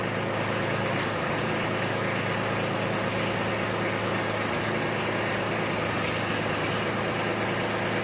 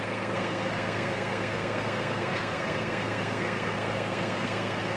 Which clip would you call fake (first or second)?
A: second